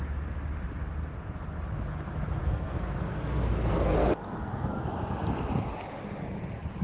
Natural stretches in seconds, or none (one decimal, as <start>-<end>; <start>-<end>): 0.0-2.4; 4.8-6.8